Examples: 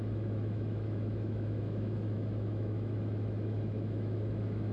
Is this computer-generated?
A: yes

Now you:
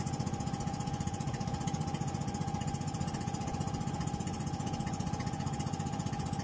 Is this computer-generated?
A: yes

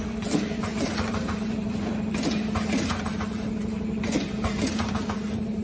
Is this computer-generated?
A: yes